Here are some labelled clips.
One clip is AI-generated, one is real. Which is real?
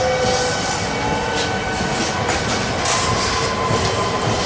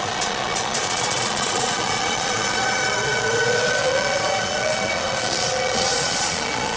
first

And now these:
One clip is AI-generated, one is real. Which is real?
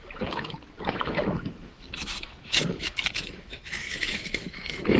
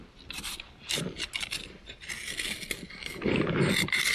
second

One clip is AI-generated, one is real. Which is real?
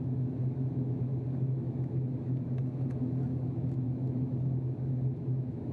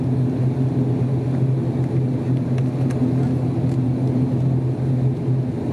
second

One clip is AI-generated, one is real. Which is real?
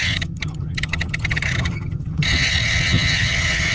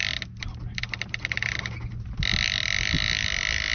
second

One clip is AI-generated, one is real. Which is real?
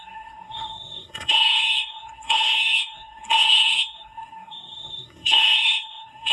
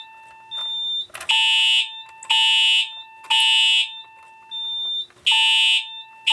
second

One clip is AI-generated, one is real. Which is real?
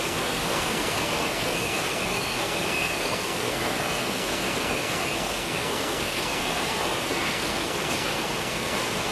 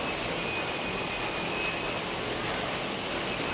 second